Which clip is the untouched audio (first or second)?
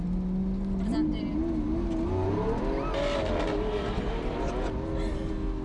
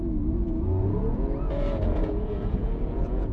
first